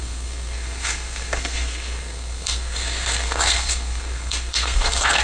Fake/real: fake